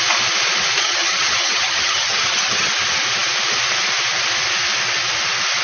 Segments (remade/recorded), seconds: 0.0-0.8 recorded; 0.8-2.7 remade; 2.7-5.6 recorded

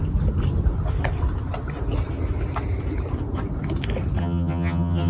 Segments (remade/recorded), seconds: 0.0-4.2 recorded; 4.2-5.1 remade

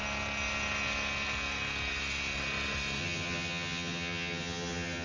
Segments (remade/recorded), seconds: 0.0-3.0 recorded; 3.0-5.0 remade